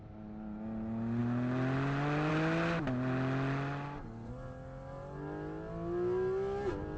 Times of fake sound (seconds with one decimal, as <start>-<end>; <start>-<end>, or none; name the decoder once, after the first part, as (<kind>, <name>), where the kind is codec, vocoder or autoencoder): none